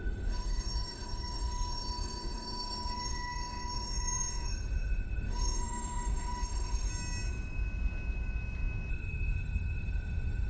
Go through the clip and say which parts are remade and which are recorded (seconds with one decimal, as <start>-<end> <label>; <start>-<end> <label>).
0.0-6.9 remade; 6.9-8.9 recorded; 8.9-10.5 remade